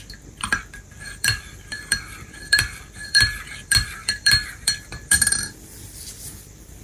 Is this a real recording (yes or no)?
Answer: no